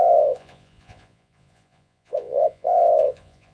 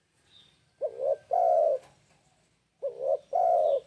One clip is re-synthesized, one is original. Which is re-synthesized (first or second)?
first